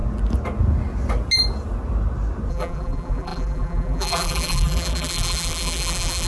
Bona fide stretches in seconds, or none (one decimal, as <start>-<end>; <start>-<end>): 0.0-2.5